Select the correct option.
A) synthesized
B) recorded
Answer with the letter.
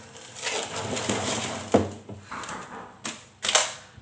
B